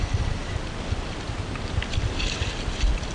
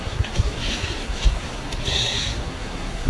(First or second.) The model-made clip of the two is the second